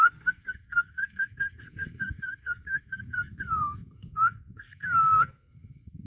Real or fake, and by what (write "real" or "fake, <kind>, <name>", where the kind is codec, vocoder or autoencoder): fake, codec, SNAC